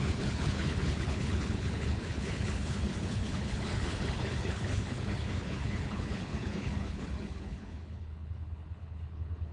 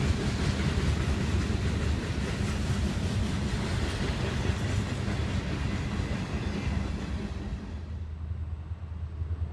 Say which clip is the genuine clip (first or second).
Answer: second